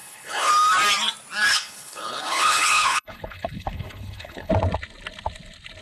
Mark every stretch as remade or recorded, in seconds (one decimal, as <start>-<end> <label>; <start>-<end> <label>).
0.0-0.5 remade; 0.5-1.5 recorded; 1.5-4.5 remade; 4.5-5.8 recorded